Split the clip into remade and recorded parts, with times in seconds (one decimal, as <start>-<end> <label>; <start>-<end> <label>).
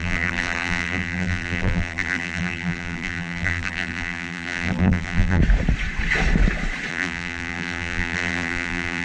0.0-5.4 remade; 5.4-6.9 recorded; 6.9-9.0 remade